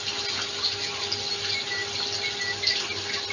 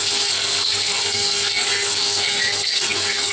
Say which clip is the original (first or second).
first